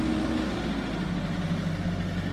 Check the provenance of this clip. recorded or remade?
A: recorded